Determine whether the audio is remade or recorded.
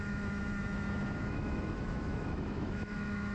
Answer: remade